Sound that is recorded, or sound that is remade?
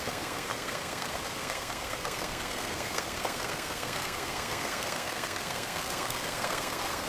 remade